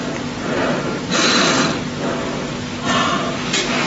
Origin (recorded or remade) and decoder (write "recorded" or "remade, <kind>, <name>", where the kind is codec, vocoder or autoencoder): recorded